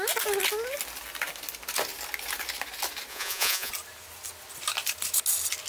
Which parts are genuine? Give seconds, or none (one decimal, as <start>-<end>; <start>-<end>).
0.0-3.1; 3.7-5.7